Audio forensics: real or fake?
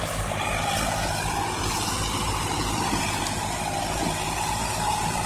fake